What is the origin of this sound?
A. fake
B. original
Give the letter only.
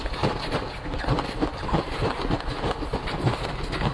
B